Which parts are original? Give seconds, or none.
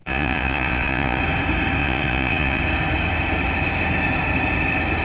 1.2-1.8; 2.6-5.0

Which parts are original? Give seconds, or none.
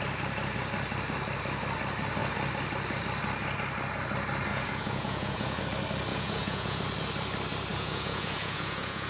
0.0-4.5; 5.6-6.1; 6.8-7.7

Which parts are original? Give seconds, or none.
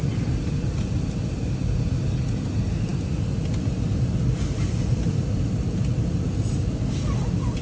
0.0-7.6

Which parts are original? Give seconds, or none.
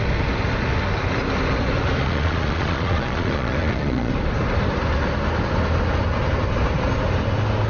0.0-2.0; 4.1-7.7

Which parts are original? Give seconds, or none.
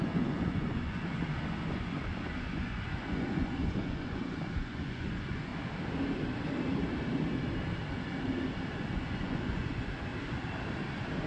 5.5-8.7; 10.1-11.3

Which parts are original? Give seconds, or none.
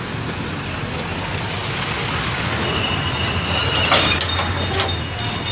0.0-5.5